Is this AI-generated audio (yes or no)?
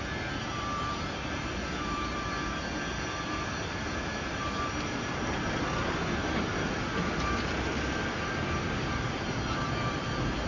yes